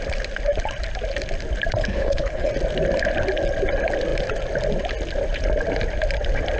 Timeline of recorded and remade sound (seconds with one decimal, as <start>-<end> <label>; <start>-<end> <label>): 0.0-1.8 recorded; 1.8-2.5 remade; 2.5-6.6 recorded